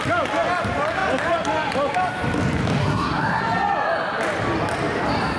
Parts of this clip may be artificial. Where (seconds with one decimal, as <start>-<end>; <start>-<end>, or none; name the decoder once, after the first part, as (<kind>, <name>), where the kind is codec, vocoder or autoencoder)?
2.8-3.4 (codec, SNAC)